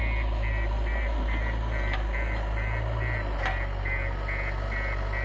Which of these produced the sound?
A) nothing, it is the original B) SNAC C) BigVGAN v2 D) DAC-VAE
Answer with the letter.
A